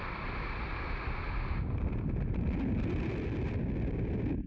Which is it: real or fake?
real